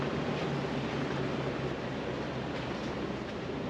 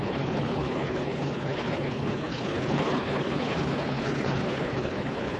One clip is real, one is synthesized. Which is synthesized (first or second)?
second